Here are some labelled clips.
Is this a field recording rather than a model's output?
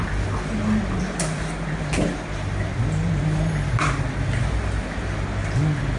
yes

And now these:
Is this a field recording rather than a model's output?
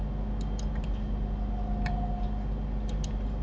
yes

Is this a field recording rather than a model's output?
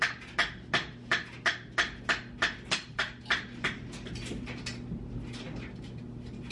yes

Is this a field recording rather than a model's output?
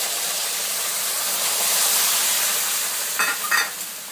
yes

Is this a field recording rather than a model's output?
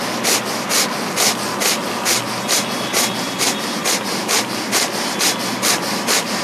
yes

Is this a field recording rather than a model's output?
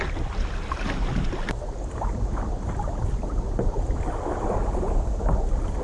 yes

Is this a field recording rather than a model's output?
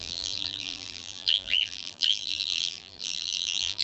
no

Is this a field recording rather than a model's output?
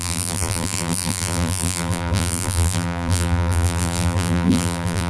no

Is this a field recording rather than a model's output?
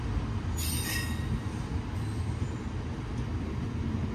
yes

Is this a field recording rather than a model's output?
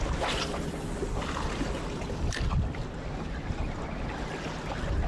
yes